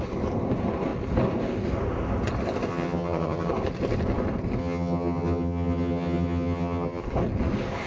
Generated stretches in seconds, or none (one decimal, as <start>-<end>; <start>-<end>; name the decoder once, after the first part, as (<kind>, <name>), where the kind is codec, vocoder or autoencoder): 2.7-3.5 (vocoder, HiFi-GAN); 4.6-7.0